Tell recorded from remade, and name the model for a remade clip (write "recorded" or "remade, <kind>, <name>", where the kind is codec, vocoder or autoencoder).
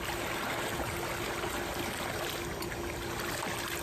recorded